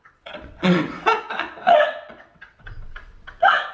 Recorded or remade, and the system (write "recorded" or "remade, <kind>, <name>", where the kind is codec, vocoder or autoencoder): remade, vocoder, WaveNeXt